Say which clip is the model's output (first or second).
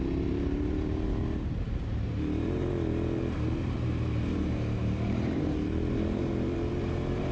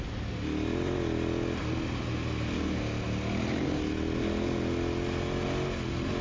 first